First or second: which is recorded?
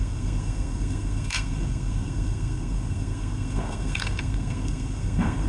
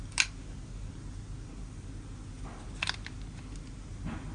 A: second